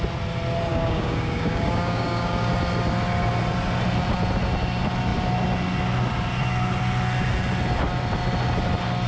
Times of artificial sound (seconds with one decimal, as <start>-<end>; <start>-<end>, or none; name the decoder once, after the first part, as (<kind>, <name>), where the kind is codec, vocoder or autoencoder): 0.7-2.5 (codec, DAC)